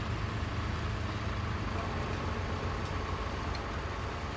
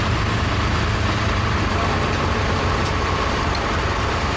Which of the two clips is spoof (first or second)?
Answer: second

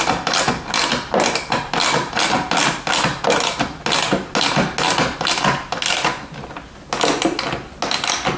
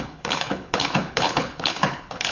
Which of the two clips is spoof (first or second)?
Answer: second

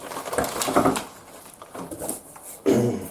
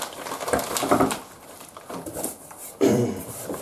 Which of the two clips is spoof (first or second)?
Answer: second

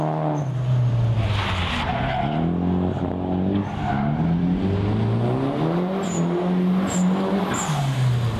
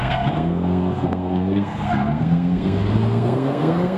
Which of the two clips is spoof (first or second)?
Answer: second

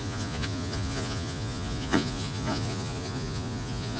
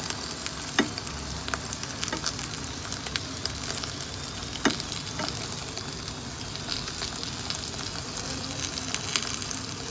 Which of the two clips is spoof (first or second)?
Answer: first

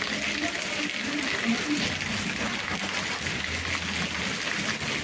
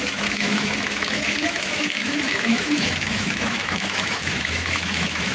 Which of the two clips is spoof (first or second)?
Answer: second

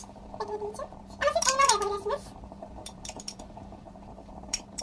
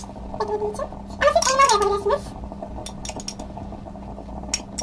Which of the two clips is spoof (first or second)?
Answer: first